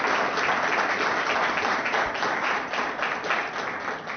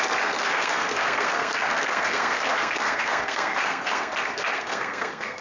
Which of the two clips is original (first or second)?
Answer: first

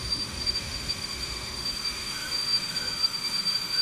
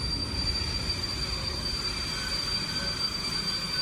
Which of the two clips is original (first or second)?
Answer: second